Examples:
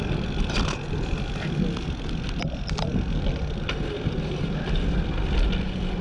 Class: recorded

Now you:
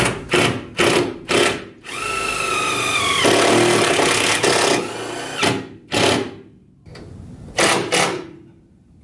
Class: recorded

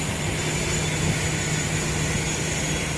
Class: recorded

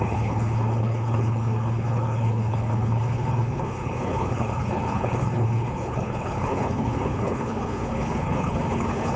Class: remade